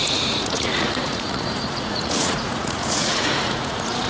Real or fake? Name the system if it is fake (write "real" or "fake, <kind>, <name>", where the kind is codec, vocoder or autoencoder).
fake, vocoder, Vocos